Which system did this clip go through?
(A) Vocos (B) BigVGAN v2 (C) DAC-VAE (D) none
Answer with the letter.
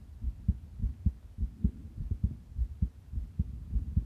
D